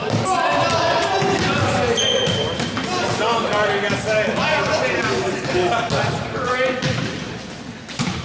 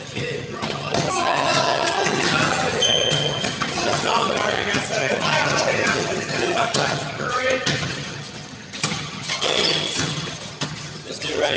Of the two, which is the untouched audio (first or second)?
first